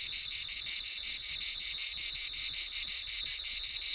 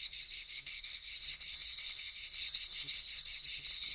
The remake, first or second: second